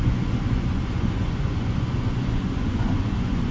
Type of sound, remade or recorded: remade